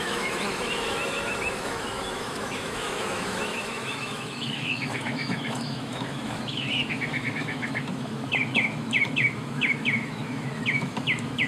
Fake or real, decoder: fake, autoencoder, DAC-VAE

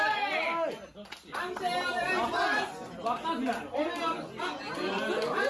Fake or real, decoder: real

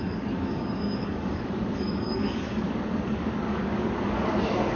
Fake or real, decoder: fake, codec, DAC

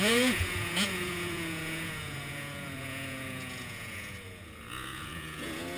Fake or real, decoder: fake, vocoder, Vocos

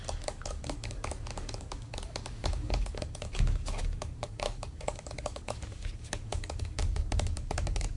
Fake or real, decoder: fake, codec, DAC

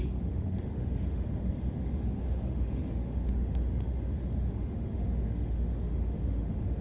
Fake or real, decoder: fake, autoencoder, DAC-VAE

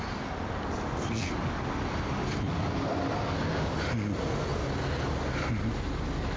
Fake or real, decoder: real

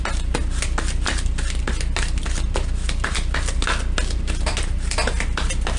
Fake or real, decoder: real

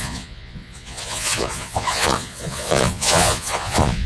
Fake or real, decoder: fake, vocoder, Vocos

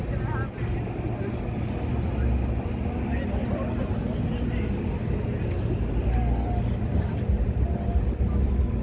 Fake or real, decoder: real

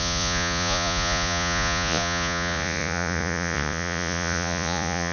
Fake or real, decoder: fake, vocoder, Vocos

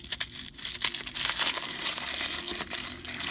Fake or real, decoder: real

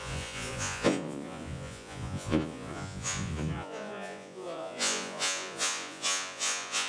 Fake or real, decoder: fake, vocoder, Vocos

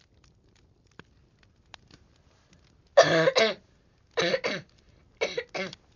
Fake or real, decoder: real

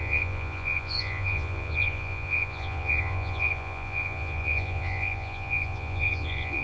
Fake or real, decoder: fake, vocoder, Vocos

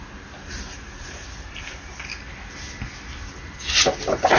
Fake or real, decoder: real